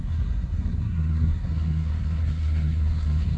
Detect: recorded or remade remade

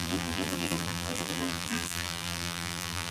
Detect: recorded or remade remade